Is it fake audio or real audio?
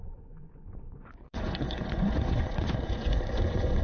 fake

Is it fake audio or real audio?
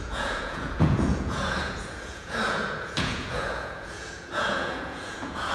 fake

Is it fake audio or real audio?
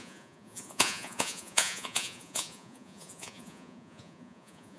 fake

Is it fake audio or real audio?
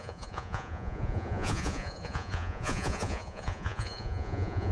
fake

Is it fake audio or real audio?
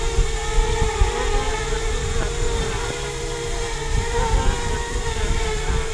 real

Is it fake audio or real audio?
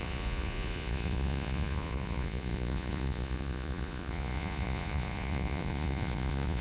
fake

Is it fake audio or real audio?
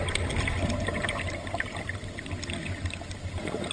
real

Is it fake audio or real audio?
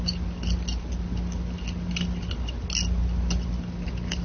real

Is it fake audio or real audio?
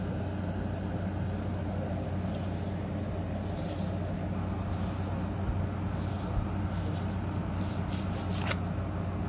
real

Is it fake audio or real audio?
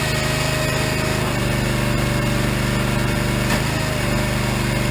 real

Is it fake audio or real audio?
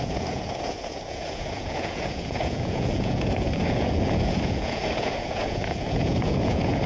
fake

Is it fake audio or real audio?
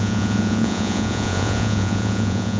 fake